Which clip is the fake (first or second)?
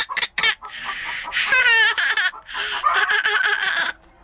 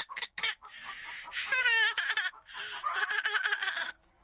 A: second